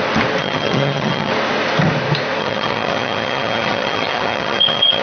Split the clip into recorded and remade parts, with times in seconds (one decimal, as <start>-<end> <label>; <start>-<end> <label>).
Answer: 0.0-0.4 recorded; 0.4-1.3 remade; 1.3-2.4 recorded; 2.4-5.0 remade

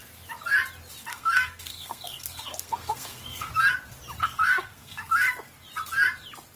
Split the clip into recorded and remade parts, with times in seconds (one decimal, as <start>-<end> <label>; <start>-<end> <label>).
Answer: 0.0-1.1 recorded; 1.1-3.5 remade; 3.5-4.2 recorded; 4.2-5.1 remade; 5.1-6.6 recorded